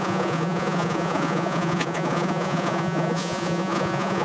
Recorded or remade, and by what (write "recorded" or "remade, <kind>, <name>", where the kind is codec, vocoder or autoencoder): remade, vocoder, Vocos